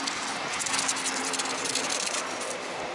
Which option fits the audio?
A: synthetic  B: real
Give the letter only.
B